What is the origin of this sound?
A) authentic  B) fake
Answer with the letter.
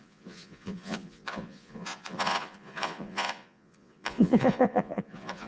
B